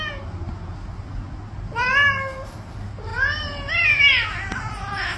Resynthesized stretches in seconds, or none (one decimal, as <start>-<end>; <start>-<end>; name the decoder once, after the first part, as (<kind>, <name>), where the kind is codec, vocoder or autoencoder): none